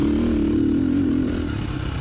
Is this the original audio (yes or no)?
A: yes